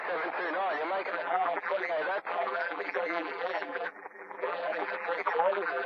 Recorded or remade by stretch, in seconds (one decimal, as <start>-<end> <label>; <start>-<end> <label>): 0.0-1.1 recorded; 1.1-1.9 remade; 1.9-2.3 recorded; 2.3-5.9 remade